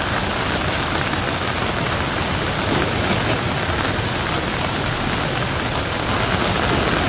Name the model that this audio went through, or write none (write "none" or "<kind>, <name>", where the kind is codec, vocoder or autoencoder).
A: none